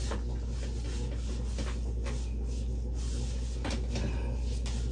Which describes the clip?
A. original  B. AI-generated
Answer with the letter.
A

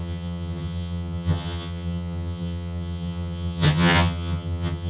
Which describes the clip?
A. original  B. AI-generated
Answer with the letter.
B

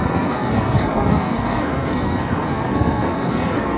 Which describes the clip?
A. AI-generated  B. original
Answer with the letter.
A